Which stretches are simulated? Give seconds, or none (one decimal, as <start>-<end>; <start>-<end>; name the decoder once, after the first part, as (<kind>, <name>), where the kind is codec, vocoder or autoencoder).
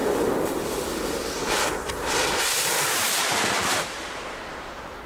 1.8-5.1 (vocoder, BigVGAN v2)